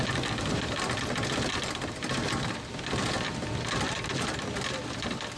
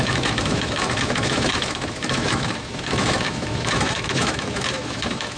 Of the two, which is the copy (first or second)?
second